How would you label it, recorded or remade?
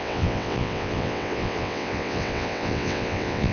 remade